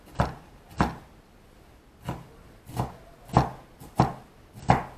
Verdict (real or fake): real